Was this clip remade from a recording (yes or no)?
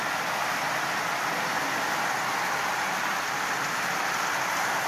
no